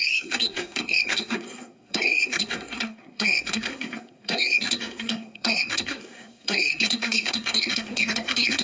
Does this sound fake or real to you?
fake